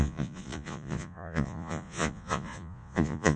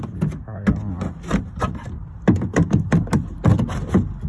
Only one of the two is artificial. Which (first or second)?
first